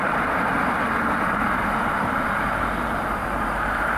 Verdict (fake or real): fake